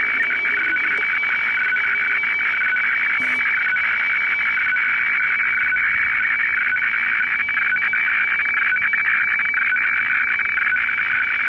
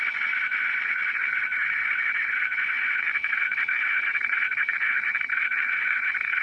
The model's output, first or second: second